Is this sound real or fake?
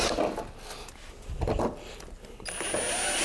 real